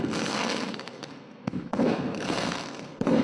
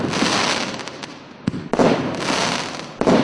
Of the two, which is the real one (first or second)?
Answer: second